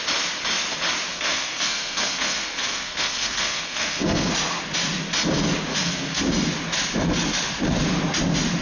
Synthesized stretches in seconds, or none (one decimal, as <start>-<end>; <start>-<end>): 1.1-4.3; 5.7-6.2